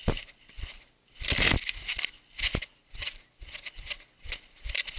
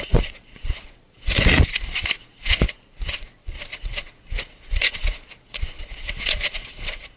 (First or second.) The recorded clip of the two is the first